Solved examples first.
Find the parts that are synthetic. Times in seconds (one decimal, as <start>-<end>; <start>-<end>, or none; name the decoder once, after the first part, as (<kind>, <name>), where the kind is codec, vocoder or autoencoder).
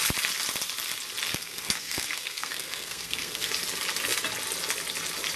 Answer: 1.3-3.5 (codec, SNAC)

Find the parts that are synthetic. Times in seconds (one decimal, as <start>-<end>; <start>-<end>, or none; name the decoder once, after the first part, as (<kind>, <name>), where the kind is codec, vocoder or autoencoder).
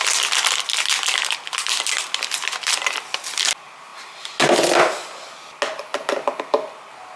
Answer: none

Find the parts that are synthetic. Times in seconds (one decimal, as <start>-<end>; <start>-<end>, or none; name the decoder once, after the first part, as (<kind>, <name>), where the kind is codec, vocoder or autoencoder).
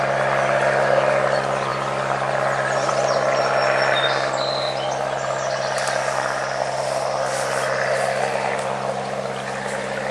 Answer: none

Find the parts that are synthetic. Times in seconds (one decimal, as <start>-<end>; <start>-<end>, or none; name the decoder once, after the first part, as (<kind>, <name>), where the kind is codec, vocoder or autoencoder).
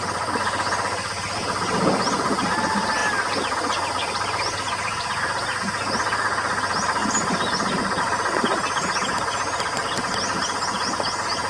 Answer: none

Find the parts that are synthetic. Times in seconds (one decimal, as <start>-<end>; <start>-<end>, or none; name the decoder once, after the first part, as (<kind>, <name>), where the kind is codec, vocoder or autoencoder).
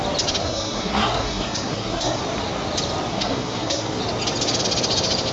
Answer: 0.4-2.2 (codec, SNAC); 3.1-4.0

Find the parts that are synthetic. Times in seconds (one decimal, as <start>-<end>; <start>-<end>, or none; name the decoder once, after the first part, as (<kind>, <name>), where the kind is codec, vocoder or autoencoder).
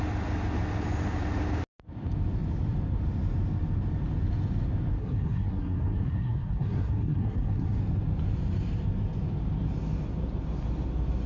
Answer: 5.0-7.8 (codec, SNAC)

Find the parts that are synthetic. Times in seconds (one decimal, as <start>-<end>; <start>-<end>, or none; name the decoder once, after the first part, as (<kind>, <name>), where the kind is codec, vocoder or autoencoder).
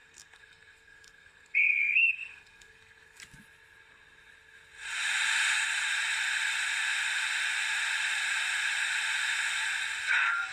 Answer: 0.0-3.2 (codec, SNAC)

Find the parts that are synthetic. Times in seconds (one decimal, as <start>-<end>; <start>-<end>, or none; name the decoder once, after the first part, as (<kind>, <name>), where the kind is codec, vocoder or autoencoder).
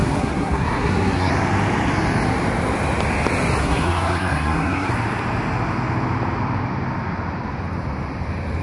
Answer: 0.0-1.3 (codec, SNAC); 3.6-4.9